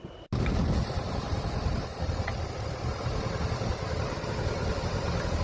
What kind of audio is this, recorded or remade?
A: recorded